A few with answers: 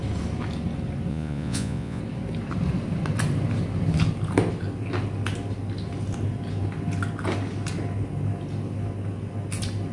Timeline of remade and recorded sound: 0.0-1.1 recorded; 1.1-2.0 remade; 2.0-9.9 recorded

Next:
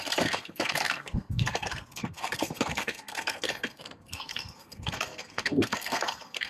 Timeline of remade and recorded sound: 0.0-6.5 remade

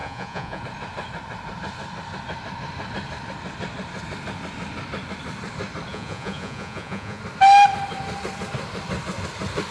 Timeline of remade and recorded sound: 0.0-0.6 remade; 0.6-5.9 recorded; 5.9-7.2 remade; 7.2-9.7 recorded

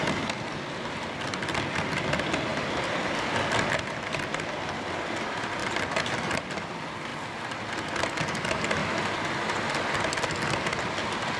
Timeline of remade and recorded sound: 0.0-2.5 recorded; 2.5-3.0 remade; 3.0-5.6 recorded; 5.6-6.6 remade; 6.6-11.4 recorded

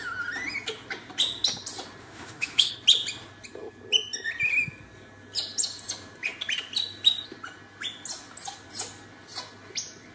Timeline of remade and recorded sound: 0.0-2.0 recorded; 2.0-2.7 remade; 2.7-10.1 recorded

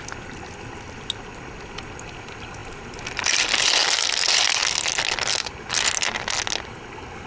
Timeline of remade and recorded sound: 0.0-7.3 recorded

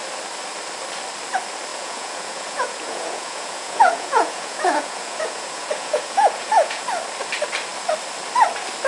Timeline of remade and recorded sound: 0.0-1.7 recorded; 1.7-6.8 remade; 6.8-8.9 recorded

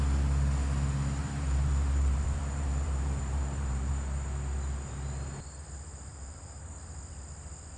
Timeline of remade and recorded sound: 0.0-1.2 recorded; 1.2-3.9 remade; 3.9-6.1 recorded; 6.1-6.7 remade; 6.7-7.8 recorded